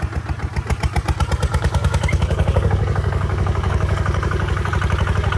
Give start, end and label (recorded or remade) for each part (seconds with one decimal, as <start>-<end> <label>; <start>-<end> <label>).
0.0-1.5 recorded; 1.5-4.7 remade; 4.7-5.4 recorded